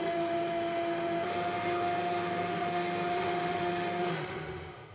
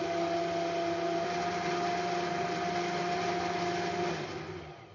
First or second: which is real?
second